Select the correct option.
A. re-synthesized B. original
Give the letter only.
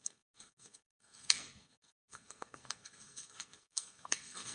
A